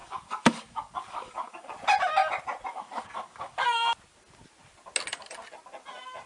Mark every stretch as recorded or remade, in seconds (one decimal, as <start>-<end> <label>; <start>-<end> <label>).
0.0-1.7 remade; 1.7-2.7 recorded; 2.7-3.9 remade; 3.9-6.3 recorded